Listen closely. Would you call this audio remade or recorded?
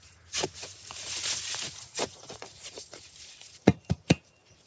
remade